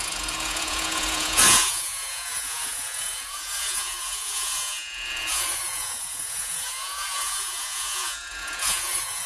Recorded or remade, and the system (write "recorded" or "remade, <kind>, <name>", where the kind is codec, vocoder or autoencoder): remade, vocoder, Vocos